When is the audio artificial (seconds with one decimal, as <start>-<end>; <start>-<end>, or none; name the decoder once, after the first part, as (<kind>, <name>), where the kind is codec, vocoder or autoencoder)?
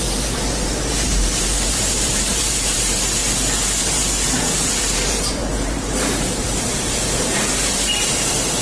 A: 0.0-3.2 (vocoder, BigVGAN v2); 3.8-8.6